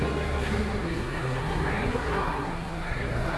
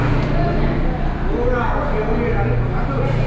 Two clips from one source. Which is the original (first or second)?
second